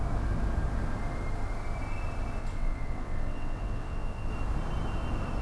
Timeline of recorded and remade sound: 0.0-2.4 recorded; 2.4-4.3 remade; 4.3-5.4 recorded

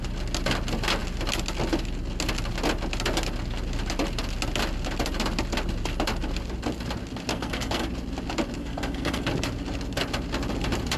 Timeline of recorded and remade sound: 0.0-7.3 recorded; 7.3-7.9 remade; 7.9-8.6 recorded; 8.6-9.3 remade; 9.3-11.0 recorded